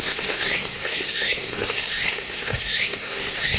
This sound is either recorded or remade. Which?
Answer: remade